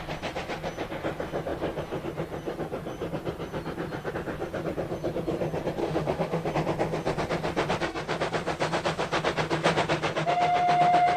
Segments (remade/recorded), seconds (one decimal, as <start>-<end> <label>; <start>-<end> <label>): 0.0-5.8 recorded; 5.8-6.5 remade; 6.5-11.2 recorded

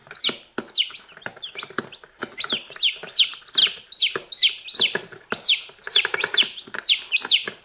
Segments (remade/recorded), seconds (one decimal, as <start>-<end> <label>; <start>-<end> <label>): 0.0-2.2 recorded; 2.2-3.6 remade; 3.6-4.8 recorded; 4.8-7.6 remade

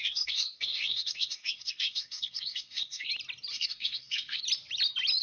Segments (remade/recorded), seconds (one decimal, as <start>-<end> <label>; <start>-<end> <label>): 0.0-3.1 remade; 3.1-3.5 recorded; 3.5-4.4 remade; 4.4-5.2 recorded